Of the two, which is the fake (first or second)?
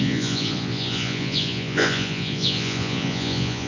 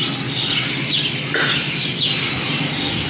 first